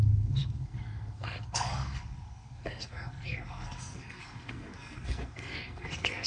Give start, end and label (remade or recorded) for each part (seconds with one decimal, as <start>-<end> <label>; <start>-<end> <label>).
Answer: 0.0-6.3 remade